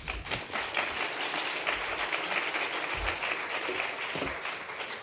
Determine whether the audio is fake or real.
real